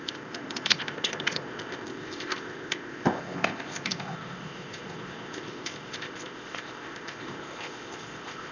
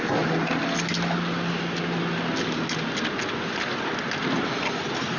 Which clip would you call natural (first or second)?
second